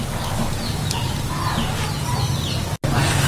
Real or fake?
real